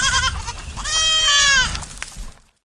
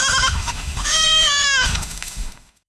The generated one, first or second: second